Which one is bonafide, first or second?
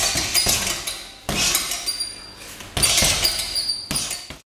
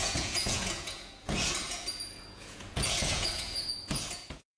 first